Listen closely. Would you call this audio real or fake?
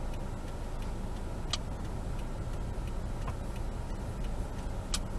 real